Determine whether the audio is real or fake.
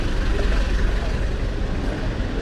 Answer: real